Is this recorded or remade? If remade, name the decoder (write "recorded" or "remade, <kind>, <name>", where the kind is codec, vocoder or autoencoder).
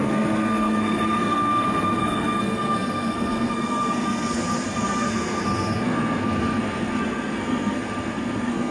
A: remade, codec, SNAC